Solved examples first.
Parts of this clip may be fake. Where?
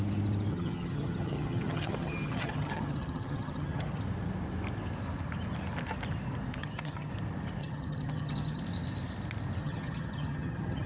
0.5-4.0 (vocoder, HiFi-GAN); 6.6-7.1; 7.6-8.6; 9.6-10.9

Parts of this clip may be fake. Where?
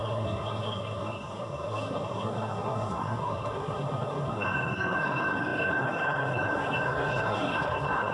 0.0-8.1 (codec, SNAC)